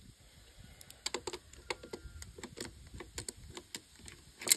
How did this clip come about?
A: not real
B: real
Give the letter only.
B